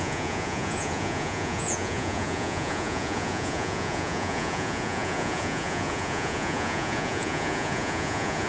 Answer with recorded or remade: remade